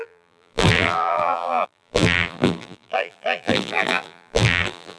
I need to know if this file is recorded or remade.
remade